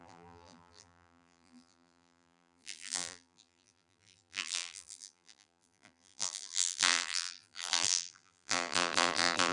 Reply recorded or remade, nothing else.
remade